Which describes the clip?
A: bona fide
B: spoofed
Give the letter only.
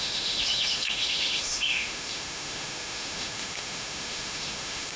B